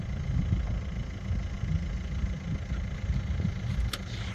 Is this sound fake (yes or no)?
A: no